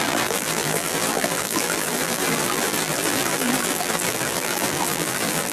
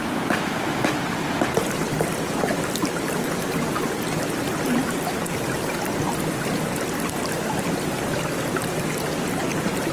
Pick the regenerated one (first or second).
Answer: first